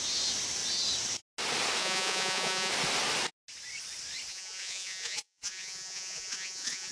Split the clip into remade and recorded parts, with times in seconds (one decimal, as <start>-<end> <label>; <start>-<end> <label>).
0.0-1.8 recorded; 1.8-2.7 remade; 2.7-4.3 recorded; 4.3-6.9 remade